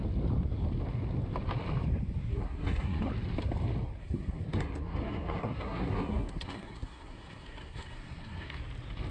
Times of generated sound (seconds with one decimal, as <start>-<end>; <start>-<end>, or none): 2.3-3.1; 4.0-8.6